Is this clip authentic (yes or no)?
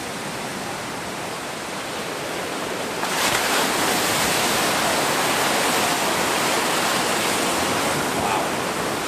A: no